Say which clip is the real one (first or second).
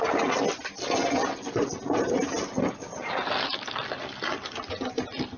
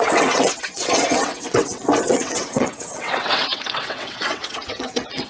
first